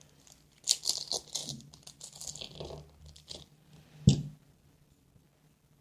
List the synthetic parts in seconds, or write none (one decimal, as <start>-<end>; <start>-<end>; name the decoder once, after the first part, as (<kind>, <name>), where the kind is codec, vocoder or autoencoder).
none